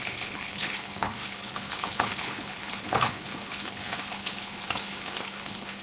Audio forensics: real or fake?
fake